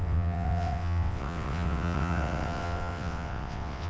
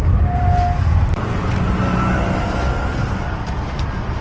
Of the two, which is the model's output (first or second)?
first